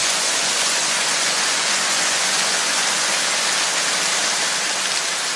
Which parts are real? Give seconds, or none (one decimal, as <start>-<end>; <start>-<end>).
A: 3.2-5.4